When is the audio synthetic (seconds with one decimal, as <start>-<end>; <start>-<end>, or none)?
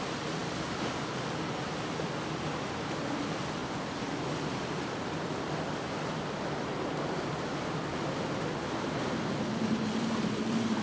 3.6-4.6